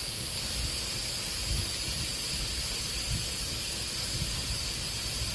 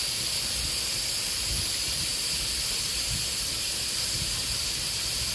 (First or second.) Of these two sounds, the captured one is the first